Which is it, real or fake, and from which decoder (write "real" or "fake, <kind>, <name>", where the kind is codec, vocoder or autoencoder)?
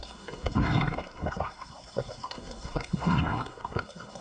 fake, codec, SNAC